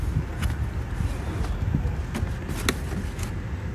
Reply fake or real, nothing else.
real